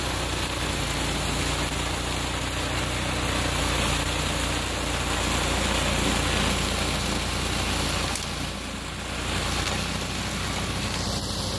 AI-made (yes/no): no